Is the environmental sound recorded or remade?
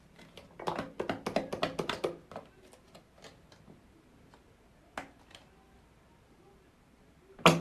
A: recorded